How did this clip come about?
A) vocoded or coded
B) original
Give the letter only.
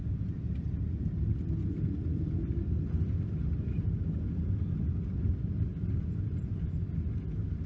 B